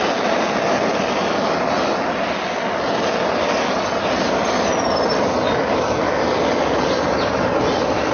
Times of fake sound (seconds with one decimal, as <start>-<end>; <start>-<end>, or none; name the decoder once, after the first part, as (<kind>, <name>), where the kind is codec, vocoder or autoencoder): none